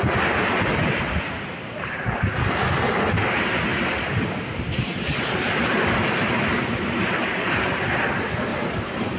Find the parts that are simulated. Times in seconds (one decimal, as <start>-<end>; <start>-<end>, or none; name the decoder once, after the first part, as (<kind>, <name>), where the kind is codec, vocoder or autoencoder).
3.7-6.3 (vocoder, BigVGAN v2); 8.5-9.2